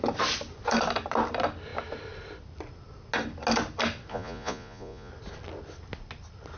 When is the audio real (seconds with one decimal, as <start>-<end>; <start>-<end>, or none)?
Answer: 0.0-4.1; 5.1-6.6